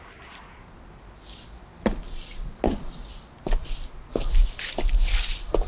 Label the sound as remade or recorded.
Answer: recorded